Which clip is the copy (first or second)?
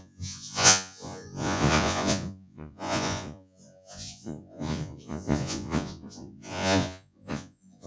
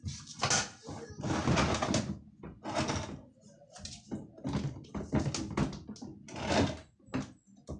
first